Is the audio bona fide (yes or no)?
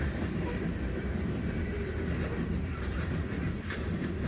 yes